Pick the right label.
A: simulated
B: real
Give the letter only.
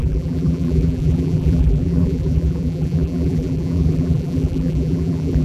A